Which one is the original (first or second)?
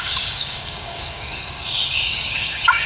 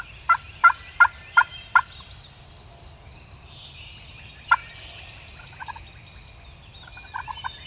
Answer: second